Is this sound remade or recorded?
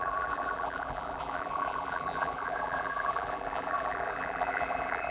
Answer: remade